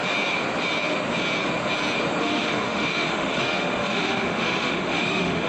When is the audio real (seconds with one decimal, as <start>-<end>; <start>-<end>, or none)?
0.0-2.2